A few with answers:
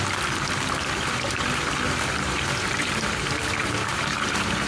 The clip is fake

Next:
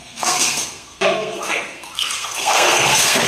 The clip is fake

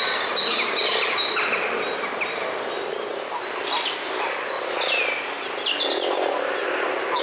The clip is real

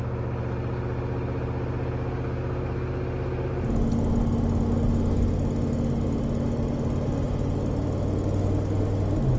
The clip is real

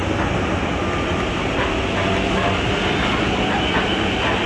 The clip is real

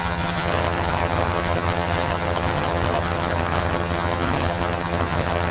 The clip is fake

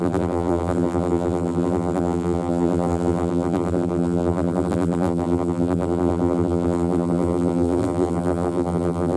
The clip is fake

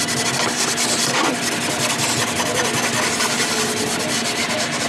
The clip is real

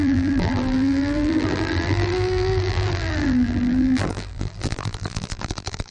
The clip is fake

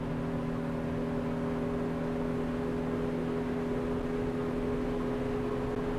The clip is real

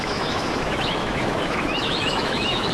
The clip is fake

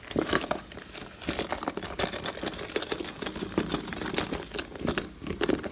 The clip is real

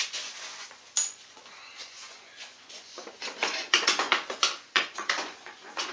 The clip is fake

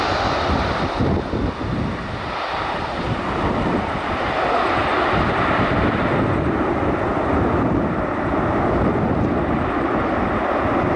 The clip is fake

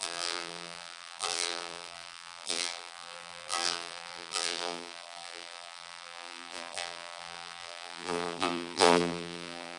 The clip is fake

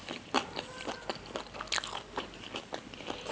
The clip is real